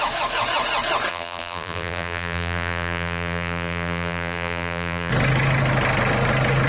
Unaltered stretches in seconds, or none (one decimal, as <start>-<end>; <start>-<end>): 0.0-1.1; 5.1-6.7